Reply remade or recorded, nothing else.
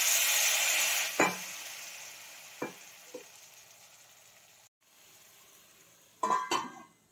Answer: recorded